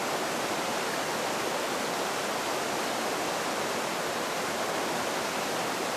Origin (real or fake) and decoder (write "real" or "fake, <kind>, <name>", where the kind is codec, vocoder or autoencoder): real